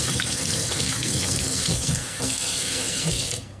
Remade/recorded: remade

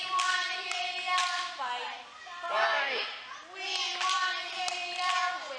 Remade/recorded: recorded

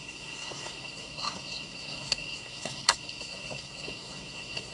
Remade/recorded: remade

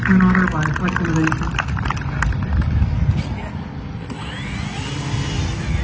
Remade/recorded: recorded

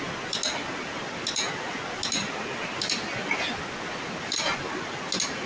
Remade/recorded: recorded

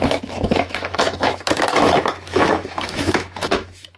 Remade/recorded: remade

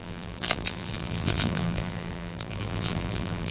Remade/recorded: remade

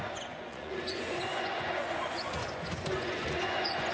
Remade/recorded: remade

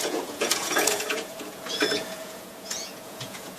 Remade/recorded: remade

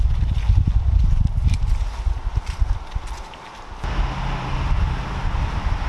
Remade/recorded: recorded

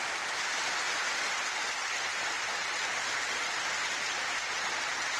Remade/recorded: recorded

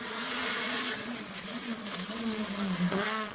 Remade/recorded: remade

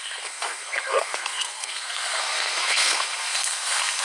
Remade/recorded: remade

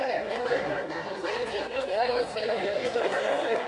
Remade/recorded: remade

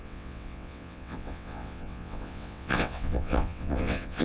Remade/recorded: remade